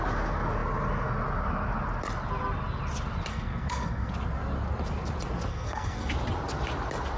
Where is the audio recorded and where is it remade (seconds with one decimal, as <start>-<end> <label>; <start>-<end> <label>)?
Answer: 0.0-3.3 recorded; 3.3-4.1 remade; 4.1-5.5 recorded; 5.5-6.1 remade; 6.1-7.2 recorded